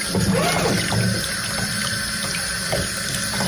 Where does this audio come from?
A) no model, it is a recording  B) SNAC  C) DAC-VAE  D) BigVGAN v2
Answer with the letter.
A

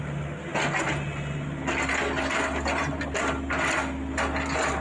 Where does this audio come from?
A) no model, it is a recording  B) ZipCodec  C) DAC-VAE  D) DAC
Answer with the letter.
A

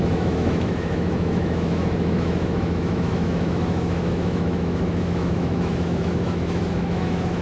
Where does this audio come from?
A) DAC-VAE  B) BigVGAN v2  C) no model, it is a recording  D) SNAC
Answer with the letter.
A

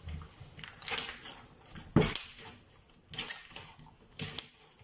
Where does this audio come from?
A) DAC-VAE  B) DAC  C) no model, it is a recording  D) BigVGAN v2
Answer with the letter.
C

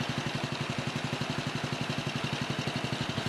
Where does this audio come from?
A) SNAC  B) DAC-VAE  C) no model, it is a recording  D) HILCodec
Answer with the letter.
C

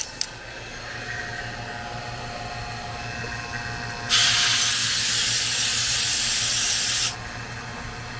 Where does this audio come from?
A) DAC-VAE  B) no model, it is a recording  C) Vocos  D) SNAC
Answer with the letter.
B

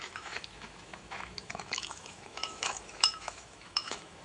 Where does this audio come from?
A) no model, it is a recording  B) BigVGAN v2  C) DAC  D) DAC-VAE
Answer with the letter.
D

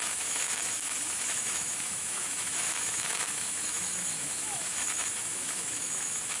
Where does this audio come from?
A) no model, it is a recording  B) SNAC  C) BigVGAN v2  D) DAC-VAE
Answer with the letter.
D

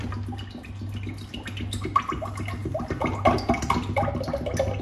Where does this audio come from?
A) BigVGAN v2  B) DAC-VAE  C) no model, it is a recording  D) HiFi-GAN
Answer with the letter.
C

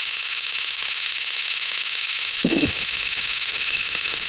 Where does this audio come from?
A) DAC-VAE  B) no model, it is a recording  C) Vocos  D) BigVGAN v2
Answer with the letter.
A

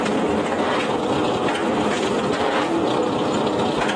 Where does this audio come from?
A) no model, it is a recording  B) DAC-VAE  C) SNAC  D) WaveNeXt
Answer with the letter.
A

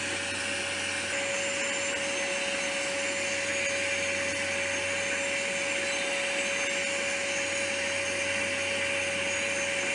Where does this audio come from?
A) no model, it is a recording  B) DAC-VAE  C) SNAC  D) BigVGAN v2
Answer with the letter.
A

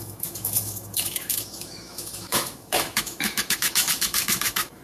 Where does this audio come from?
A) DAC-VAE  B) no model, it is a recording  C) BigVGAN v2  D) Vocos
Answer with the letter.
A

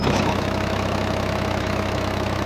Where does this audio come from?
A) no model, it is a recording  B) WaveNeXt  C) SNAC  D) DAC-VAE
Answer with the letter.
D